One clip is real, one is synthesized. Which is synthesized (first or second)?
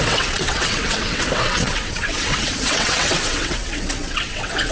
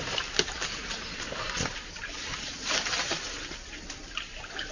first